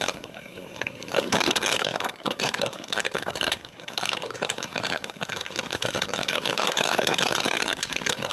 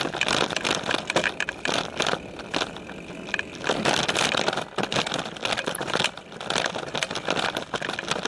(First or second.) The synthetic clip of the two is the first